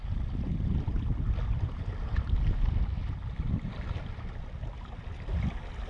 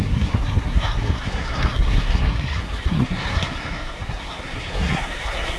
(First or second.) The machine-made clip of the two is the second